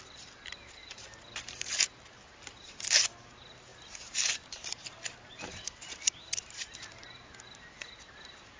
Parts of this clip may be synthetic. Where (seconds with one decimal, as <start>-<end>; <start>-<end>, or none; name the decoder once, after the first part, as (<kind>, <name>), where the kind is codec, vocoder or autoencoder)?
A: 0.8-3.1 (vocoder, BigVGAN v2); 3.7-7.7